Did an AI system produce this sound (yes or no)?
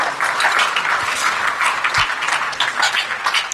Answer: no